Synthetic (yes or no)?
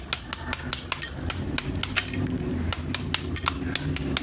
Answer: no